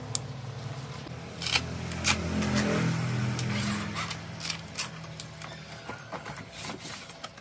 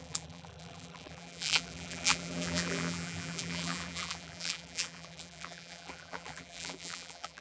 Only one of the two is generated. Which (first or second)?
second